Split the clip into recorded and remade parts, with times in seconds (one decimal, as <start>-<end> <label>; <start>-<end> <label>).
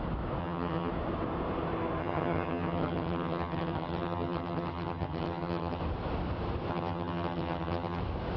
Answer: 0.0-0.4 recorded; 0.4-0.9 remade; 0.9-2.0 recorded; 2.0-5.8 remade; 5.8-6.7 recorded; 6.7-8.0 remade; 8.0-8.4 recorded